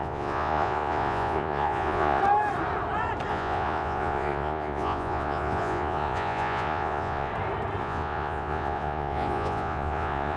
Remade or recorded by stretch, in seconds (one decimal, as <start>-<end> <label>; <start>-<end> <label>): 0.0-2.2 remade; 2.2-3.3 recorded; 3.3-7.3 remade; 7.3-7.8 recorded; 7.8-10.4 remade